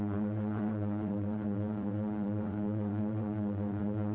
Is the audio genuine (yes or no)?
no